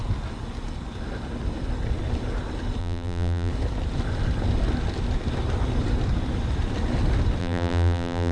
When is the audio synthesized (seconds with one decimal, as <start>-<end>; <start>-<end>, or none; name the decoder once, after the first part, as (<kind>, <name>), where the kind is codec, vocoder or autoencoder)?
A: 2.8-3.5 (vocoder, BigVGAN v2); 7.4-8.3